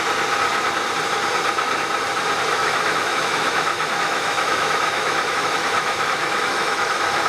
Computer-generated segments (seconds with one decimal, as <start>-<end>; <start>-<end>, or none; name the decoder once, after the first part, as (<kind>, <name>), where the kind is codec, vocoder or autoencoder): 2.6-7.3 (autoencoder, DAC-VAE)